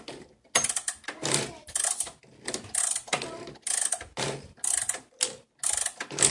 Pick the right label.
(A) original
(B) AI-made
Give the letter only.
A